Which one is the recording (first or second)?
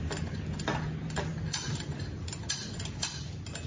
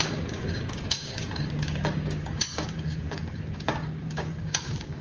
first